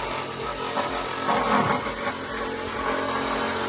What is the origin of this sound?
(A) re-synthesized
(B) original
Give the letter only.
B